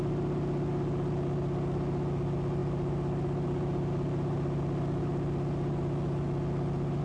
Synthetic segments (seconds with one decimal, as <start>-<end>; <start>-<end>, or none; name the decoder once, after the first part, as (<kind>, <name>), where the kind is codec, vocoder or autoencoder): none